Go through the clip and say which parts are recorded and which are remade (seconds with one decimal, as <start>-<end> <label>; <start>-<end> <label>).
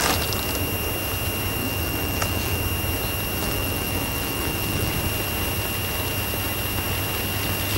0.0-1.6 recorded; 1.6-2.6 remade; 2.6-3.4 recorded; 3.4-4.9 remade; 4.9-7.8 recorded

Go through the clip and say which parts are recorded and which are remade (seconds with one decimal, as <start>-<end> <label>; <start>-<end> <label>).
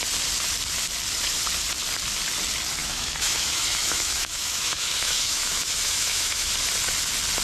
0.0-2.8 recorded; 2.8-6.5 remade; 6.5-7.4 recorded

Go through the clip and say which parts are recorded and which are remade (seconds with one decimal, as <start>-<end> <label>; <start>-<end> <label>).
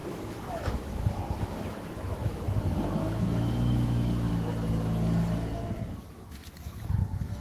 0.0-4.3 remade; 4.3-6.0 recorded; 6.0-7.4 remade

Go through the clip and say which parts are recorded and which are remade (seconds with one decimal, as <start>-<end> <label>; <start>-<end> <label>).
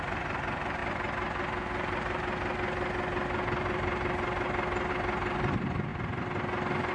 0.0-6.9 recorded